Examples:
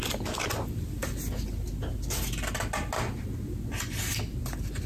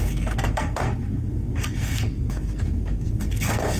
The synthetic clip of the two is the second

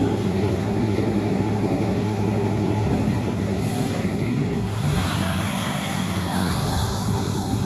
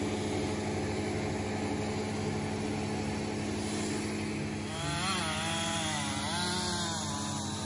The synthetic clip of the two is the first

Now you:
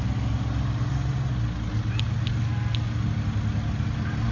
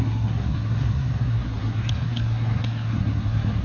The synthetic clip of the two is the second